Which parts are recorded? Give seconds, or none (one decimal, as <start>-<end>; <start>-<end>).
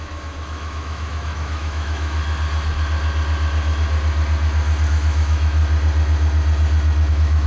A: 2.2-4.9; 5.6-7.1